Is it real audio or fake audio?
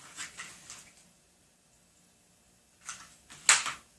real